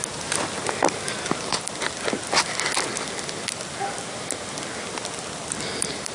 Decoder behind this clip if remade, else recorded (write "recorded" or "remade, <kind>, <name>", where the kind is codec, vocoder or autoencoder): recorded